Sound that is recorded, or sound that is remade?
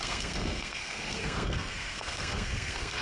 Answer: remade